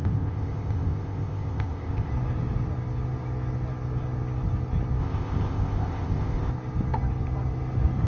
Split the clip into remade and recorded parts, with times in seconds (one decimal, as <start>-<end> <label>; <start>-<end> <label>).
0.0-2.1 remade; 2.1-5.0 recorded; 5.0-6.5 remade; 6.5-8.1 recorded